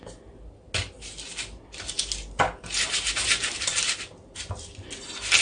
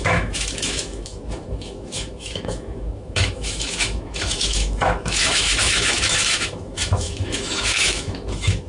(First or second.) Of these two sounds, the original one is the first